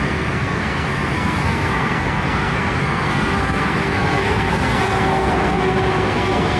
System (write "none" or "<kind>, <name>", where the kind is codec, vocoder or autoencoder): codec, SNAC